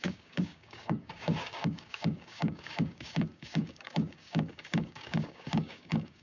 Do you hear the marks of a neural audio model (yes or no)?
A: yes